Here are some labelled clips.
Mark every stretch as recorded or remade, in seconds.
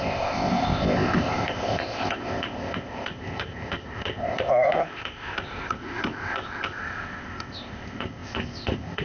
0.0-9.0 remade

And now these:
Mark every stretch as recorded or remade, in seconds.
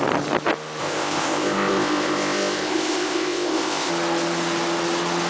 0.0-0.8 recorded; 0.8-3.9 remade; 3.9-5.3 recorded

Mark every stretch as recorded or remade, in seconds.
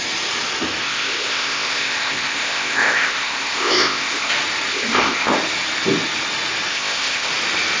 0.0-0.8 recorded; 0.8-4.3 remade; 4.3-4.7 recorded; 4.7-5.3 remade; 5.3-6.7 recorded; 6.7-7.3 remade; 7.3-7.8 recorded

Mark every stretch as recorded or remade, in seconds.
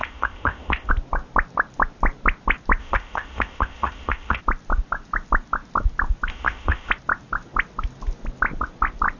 0.0-0.9 remade; 0.9-2.8 recorded; 2.8-4.4 remade; 4.4-6.3 recorded; 6.3-6.9 remade; 6.9-9.2 recorded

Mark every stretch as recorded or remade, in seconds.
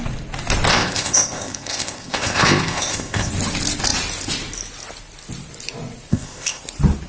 0.0-0.7 recorded; 0.7-3.3 remade; 3.3-6.1 recorded; 6.1-6.6 remade; 6.6-7.1 recorded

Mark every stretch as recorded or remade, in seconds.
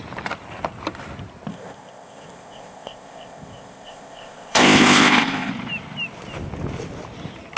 0.0-1.5 recorded; 1.5-5.5 remade; 5.5-7.6 recorded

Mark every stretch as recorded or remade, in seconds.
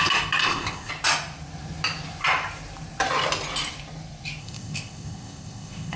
0.0-0.4 recorded; 0.4-0.9 remade; 0.9-4.4 recorded; 4.4-6.0 remade